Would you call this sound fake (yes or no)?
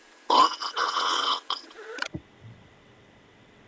yes